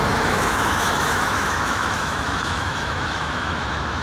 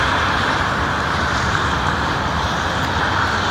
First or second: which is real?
second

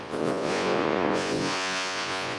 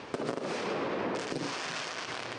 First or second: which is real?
second